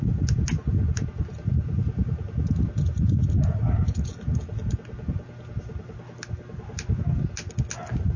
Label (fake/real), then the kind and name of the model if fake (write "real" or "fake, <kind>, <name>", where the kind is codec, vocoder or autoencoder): real